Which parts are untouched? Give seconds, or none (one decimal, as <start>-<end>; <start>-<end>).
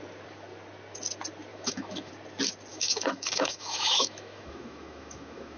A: 0.0-1.5; 2.1-2.7